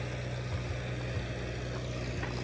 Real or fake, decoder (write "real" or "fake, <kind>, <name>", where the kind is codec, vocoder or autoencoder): real